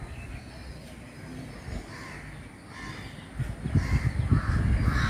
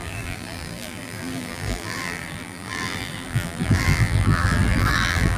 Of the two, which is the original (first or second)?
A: first